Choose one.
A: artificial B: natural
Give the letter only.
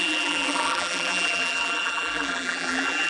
A